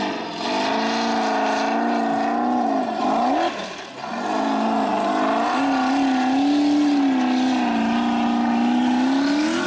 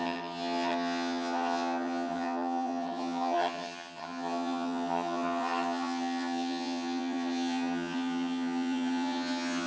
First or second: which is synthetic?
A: second